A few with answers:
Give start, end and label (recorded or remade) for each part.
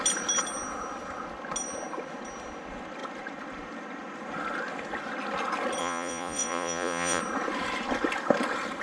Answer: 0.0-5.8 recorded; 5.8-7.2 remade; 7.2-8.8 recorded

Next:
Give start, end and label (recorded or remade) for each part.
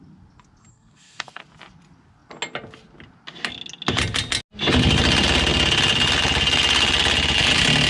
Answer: 0.0-0.7 recorded; 0.7-1.4 remade; 1.4-7.9 recorded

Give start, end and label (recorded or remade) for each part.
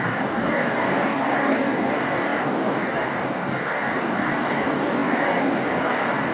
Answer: 0.0-6.3 remade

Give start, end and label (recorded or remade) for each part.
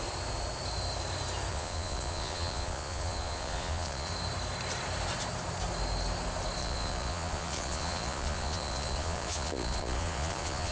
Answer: 0.0-1.5 recorded; 1.5-4.1 remade; 4.1-6.6 recorded; 6.6-10.7 remade